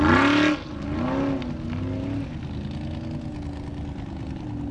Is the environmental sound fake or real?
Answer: real